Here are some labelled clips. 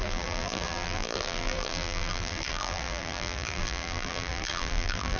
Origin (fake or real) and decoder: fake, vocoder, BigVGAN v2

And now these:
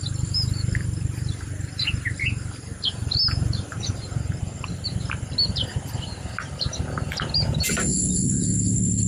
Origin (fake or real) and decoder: real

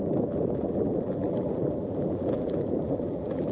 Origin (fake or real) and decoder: fake, vocoder, BigVGAN v2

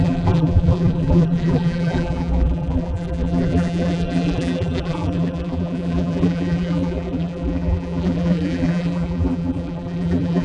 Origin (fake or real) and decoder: fake, vocoder, BigVGAN v2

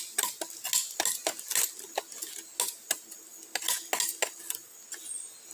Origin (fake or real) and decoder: real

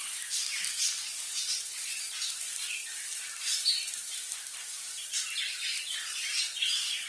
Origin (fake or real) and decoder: fake, vocoder, BigVGAN v2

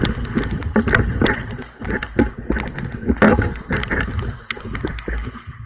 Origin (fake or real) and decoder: real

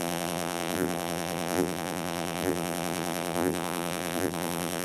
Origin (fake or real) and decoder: fake, vocoder, BigVGAN v2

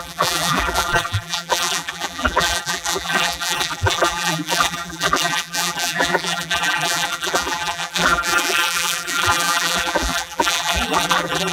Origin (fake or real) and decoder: fake, vocoder, BigVGAN v2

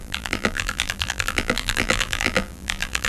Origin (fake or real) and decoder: fake, vocoder, BigVGAN v2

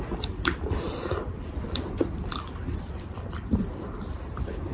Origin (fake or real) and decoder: fake, vocoder, BigVGAN v2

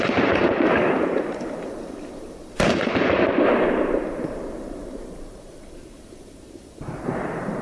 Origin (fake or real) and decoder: fake, vocoder, BigVGAN v2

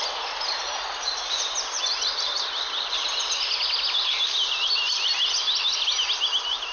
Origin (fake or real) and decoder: fake, vocoder, BigVGAN v2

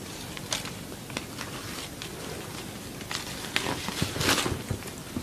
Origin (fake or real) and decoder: real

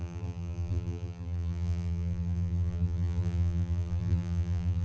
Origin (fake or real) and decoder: fake, vocoder, BigVGAN v2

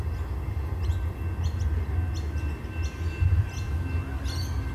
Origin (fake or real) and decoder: real